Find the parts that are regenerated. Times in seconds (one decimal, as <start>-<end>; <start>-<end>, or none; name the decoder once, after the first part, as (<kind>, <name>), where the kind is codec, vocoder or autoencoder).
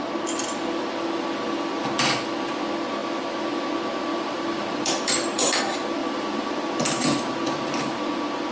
4.1-5.6 (vocoder, BigVGAN v2); 6.0-8.0